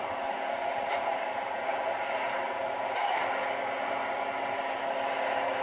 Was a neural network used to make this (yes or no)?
no